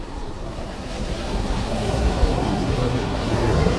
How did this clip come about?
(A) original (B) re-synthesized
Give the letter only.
B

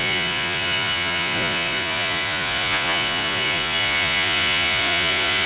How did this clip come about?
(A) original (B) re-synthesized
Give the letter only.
B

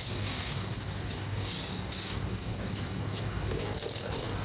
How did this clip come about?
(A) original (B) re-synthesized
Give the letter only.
B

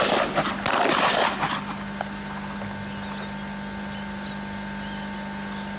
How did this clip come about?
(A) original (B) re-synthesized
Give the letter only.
A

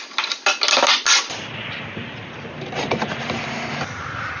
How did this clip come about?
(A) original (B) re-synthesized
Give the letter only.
A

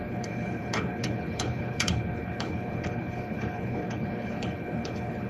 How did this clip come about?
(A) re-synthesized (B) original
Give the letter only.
A